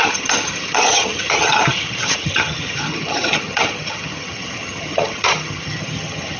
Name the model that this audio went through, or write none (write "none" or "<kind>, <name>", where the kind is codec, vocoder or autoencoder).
vocoder, HiFi-GAN